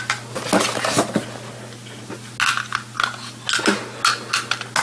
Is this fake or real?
real